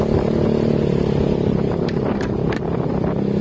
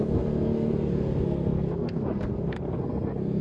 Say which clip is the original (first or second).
first